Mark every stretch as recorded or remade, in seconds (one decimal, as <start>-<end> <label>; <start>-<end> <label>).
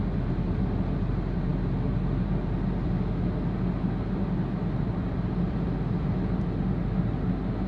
0.0-7.7 recorded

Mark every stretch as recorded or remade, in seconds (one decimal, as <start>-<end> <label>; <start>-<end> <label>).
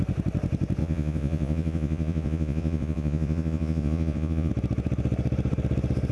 0.0-0.8 recorded; 0.8-4.5 remade; 4.5-6.1 recorded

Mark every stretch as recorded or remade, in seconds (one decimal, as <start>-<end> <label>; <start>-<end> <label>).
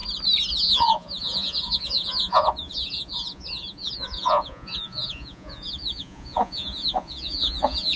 0.0-0.5 recorded; 0.5-8.0 remade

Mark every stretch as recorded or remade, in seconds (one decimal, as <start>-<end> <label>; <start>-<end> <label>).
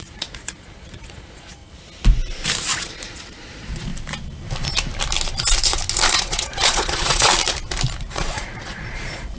0.0-1.6 remade; 1.6-2.8 recorded; 2.8-3.9 remade; 3.9-6.1 recorded; 6.1-7.3 remade; 7.3-8.0 recorded; 8.0-9.4 remade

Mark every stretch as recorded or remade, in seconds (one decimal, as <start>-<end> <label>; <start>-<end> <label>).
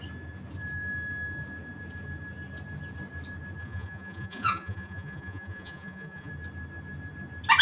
0.0-3.6 recorded; 3.6-6.3 remade; 6.3-7.6 recorded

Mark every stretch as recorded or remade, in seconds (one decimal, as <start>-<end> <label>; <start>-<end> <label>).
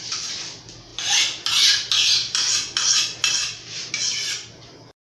0.0-5.0 recorded